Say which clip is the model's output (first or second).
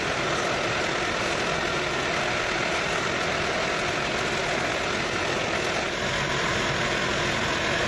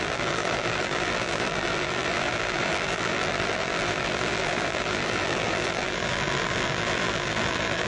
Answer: second